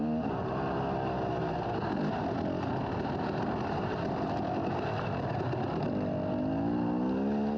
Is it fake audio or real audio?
real